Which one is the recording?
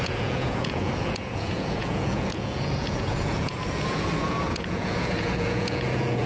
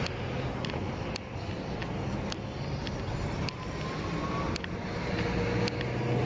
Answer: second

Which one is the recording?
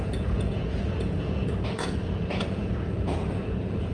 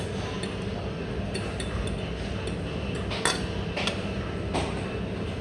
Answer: second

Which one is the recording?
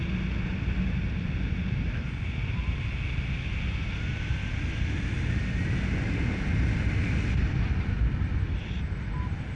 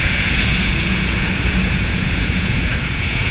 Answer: first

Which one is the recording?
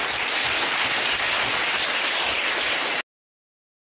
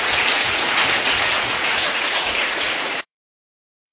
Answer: first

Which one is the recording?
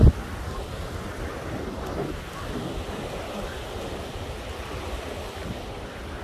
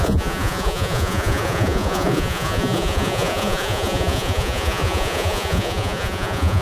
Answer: first